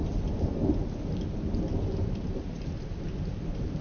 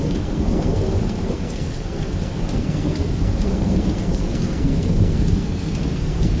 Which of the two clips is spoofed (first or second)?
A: second